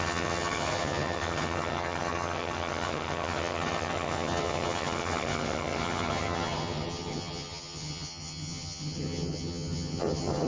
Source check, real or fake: fake